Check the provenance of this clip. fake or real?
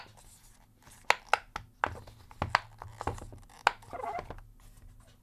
real